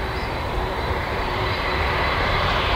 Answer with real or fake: fake